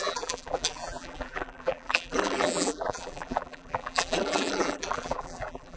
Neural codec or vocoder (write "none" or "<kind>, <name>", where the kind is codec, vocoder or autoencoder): vocoder, BigVGAN v2